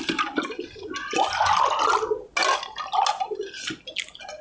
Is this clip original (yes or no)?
yes